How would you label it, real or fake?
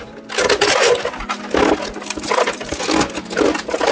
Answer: real